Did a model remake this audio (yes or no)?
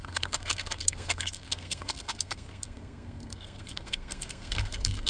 yes